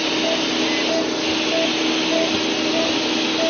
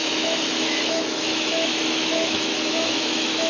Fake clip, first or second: second